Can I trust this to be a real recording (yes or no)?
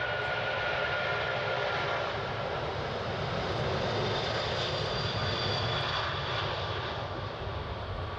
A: yes